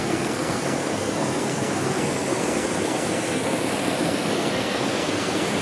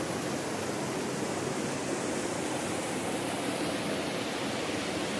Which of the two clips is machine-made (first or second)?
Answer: first